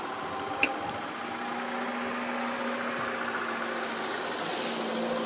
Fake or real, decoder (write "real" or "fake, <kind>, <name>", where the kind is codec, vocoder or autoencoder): real